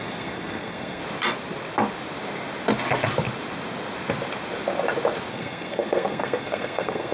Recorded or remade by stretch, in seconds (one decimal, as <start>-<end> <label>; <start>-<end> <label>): 0.0-1.0 remade; 1.0-5.3 recorded; 5.3-7.1 remade